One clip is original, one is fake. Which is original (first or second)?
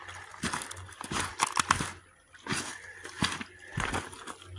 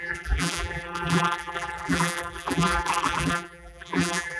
first